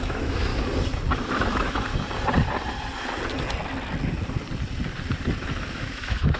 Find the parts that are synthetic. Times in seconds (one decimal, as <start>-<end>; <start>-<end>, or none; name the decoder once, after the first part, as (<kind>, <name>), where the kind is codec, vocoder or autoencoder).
0.0-0.5 (autoencoder, DAC-VAE); 1.4-1.9; 5.7-6.4